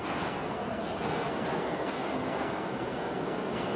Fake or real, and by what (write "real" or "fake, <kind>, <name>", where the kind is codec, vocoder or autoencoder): fake, codec, SNAC